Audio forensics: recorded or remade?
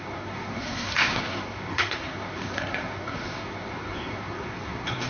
remade